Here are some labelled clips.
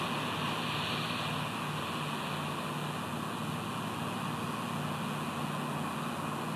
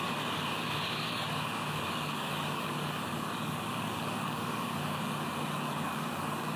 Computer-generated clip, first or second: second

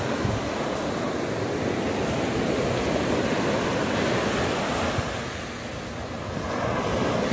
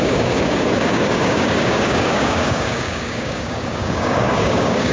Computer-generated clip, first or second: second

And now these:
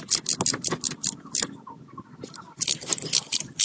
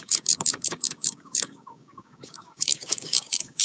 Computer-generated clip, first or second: second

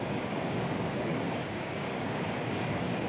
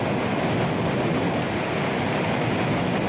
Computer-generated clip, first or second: first